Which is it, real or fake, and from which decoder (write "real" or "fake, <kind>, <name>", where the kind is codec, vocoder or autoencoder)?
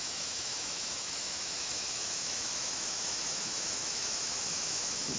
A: fake, autoencoder, DAC-VAE